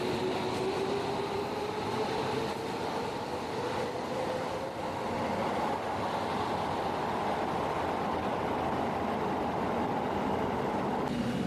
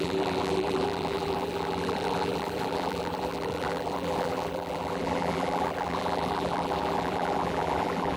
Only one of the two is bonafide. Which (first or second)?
first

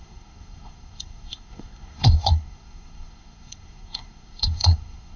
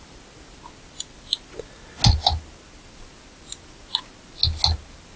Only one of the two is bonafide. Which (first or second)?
second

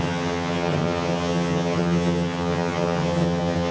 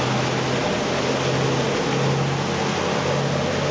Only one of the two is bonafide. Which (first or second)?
second